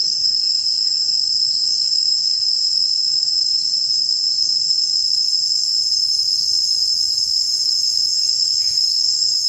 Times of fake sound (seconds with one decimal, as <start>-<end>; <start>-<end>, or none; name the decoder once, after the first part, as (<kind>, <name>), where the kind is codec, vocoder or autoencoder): 0.0-9.5 (autoencoder, DAC-VAE)